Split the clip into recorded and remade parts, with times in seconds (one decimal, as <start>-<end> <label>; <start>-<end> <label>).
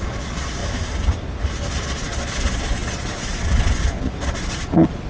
0.0-0.6 remade; 0.6-1.7 recorded; 1.7-5.1 remade